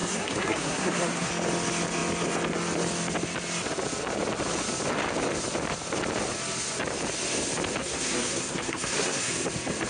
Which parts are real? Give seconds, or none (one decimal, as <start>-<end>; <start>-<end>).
1.3-7.8; 9.3-9.9